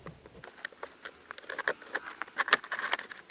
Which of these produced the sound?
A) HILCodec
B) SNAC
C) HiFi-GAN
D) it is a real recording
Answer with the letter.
D